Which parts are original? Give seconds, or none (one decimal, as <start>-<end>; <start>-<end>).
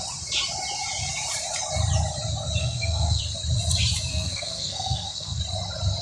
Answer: 0.0-2.6; 3.2-4.1; 5.4-6.0